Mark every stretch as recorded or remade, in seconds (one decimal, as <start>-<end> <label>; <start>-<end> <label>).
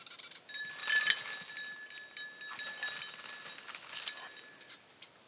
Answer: 0.0-5.3 recorded